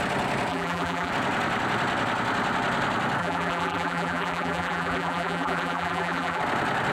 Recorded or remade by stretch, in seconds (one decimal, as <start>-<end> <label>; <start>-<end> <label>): 0.0-0.5 recorded; 0.5-1.1 remade; 1.1-3.2 recorded; 3.2-6.4 remade; 6.4-6.9 recorded

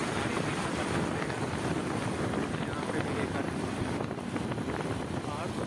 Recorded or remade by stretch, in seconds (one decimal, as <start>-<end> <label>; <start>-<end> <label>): 0.0-5.7 recorded

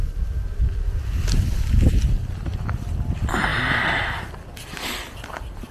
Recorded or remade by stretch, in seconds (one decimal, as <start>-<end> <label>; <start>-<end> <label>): 0.0-5.7 recorded

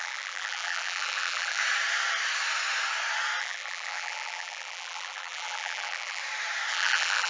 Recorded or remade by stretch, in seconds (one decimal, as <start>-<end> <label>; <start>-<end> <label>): 0.0-1.6 remade; 1.6-3.4 recorded; 3.4-6.2 remade; 6.2-6.7 recorded; 6.7-7.3 remade